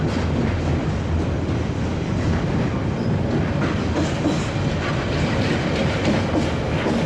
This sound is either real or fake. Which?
real